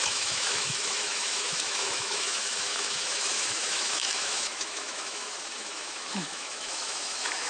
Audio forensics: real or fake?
fake